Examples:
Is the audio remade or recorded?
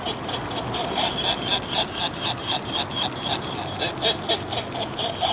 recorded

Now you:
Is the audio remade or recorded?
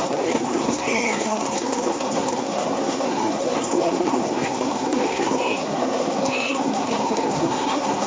remade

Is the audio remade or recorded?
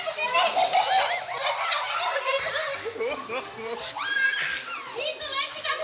recorded